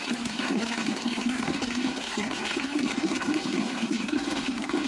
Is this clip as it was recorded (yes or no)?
no